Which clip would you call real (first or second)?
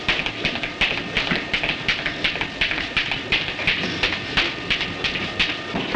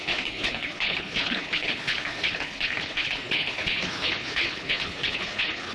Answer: first